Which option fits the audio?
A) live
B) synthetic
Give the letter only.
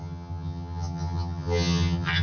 B